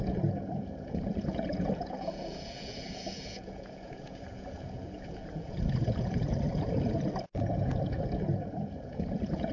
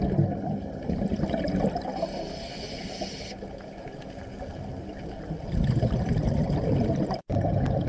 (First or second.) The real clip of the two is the second